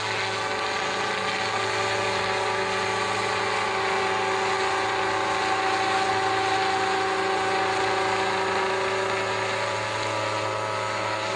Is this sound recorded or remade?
recorded